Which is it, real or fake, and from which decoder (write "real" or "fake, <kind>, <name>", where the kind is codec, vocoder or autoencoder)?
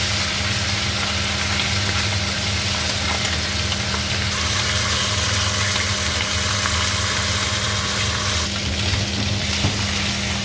real